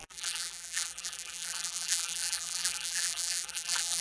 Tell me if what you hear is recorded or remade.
remade